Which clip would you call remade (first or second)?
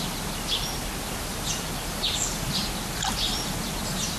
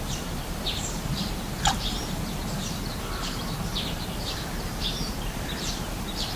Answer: second